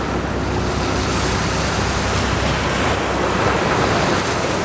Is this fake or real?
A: real